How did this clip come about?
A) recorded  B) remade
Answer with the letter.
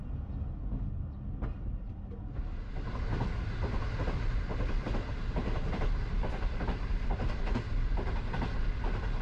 A